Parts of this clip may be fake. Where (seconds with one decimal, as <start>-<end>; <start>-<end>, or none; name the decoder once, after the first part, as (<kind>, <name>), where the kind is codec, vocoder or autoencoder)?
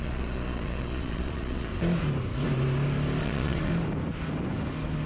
0.0-1.7 (vocoder, Vocos); 3.2-3.7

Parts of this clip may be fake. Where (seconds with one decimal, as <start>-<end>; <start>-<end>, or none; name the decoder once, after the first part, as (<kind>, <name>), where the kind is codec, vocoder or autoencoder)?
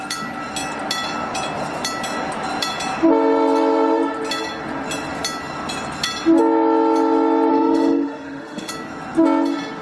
7.5-8.7 (autoencoder, DAC-VAE)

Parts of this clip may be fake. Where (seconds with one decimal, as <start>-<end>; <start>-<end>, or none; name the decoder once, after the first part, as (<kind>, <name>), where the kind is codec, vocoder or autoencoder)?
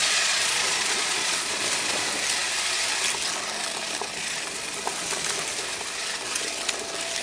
0.0-1.6 (vocoder, Vocos)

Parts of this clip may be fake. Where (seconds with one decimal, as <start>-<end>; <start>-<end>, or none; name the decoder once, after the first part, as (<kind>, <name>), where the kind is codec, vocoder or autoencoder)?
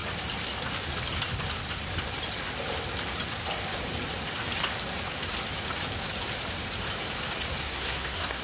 7.6-8.4 (codec, SNAC)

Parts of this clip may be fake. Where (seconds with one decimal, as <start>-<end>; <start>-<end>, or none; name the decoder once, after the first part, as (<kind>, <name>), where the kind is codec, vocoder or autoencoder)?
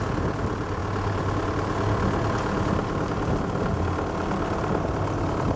none